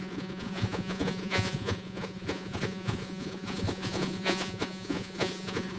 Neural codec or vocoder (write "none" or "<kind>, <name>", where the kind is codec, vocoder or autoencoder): vocoder, Vocos